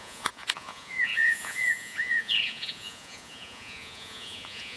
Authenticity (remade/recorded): remade